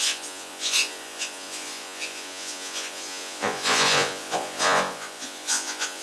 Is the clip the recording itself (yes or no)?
no